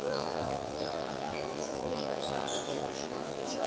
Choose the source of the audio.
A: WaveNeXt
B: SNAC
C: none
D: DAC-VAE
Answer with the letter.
A